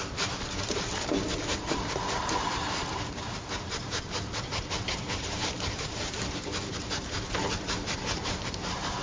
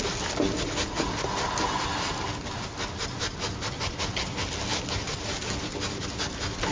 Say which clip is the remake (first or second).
first